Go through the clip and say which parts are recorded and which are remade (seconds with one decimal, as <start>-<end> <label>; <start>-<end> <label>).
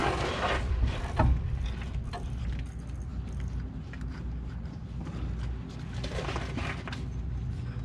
0.0-7.8 recorded